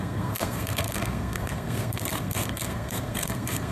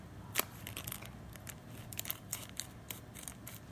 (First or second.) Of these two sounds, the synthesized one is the first